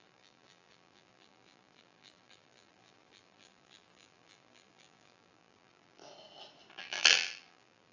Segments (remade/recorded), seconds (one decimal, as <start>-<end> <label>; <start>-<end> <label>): 0.0-6.0 remade; 6.0-6.7 recorded; 6.7-7.9 remade